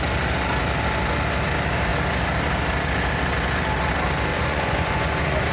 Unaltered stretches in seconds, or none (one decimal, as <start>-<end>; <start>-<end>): 0.0-4.3